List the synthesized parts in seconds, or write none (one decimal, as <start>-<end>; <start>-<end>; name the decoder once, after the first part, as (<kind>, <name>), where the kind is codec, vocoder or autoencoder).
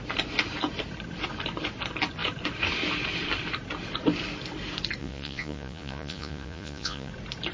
5.0-7.1 (vocoder, Vocos)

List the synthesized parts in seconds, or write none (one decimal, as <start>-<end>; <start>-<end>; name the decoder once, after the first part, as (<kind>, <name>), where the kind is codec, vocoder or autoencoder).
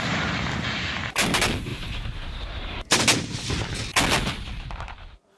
1.7-3.0 (vocoder, BigVGAN v2)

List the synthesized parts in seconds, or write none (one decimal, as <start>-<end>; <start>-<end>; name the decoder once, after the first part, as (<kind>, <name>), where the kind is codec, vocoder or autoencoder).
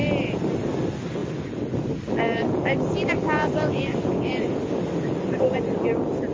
none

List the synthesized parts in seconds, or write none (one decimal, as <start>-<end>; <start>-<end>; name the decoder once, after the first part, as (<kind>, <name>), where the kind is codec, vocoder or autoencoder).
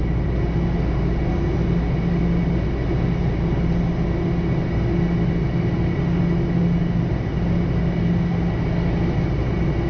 none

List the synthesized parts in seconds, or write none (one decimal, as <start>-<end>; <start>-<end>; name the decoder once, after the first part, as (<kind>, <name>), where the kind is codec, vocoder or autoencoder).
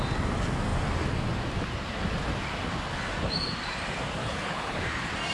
4.2-4.8 (codec, HILCodec)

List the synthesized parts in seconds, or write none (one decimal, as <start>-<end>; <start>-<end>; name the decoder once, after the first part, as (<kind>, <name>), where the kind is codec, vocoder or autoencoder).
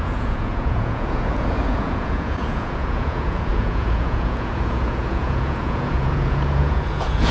0.0-7.3 (vocoder, Vocos)